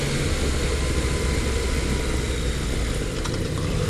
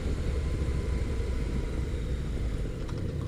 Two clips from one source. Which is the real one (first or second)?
first